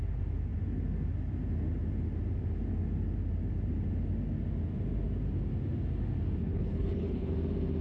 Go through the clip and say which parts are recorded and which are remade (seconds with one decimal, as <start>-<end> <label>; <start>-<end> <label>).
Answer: 0.0-6.4 recorded; 6.4-7.3 remade; 7.3-7.8 recorded